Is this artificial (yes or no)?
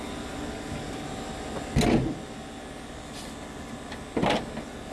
no